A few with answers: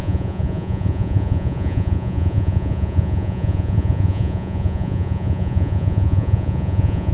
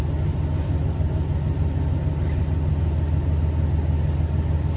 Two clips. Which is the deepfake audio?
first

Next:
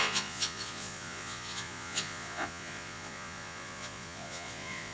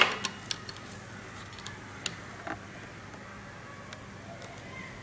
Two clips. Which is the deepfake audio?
first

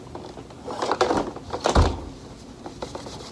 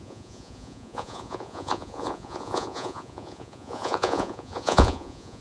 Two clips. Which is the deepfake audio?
second